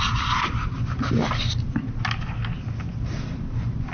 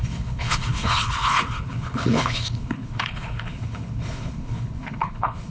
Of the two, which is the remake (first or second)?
second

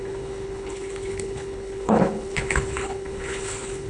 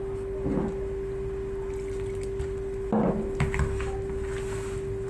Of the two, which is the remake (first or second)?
first